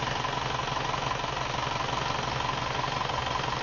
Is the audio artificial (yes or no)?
no